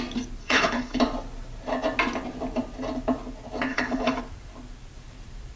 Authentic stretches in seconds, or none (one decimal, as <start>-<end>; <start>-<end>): 0.0-0.4; 1.0-3.7; 4.2-5.6